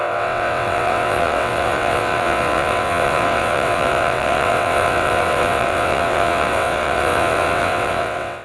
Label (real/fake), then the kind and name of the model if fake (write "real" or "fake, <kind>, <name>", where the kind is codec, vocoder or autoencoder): fake, vocoder, WaveNeXt